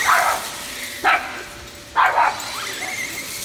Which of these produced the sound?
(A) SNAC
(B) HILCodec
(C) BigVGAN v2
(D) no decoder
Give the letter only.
D